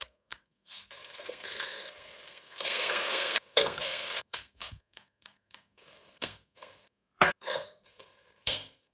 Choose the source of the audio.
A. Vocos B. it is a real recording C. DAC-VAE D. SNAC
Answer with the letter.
D